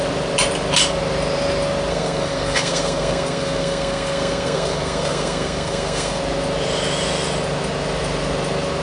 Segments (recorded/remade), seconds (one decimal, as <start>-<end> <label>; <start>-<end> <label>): 0.0-1.9 recorded; 1.9-6.2 remade; 6.2-8.8 recorded